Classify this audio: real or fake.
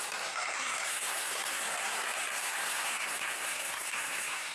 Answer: fake